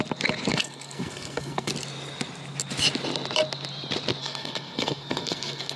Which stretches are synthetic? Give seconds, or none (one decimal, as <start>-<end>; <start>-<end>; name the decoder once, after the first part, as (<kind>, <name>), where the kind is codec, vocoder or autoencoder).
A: 0.5-1.7 (codec, SNAC); 4.2-5.8